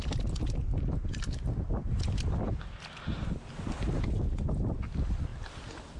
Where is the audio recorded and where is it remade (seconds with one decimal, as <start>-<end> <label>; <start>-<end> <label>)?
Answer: 0.0-6.0 recorded